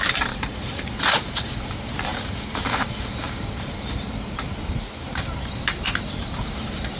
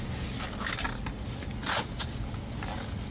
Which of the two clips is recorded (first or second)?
second